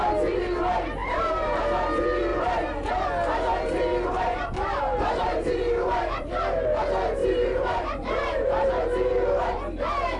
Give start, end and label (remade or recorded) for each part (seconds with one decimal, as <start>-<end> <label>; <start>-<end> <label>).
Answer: 0.0-1.0 recorded; 1.0-1.6 remade; 1.6-2.3 recorded; 2.3-2.9 remade; 2.9-4.1 recorded; 4.1-6.3 remade; 6.3-7.2 recorded; 7.2-8.7 remade; 8.7-10.2 recorded